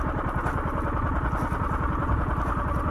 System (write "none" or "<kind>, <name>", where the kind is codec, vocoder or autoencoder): none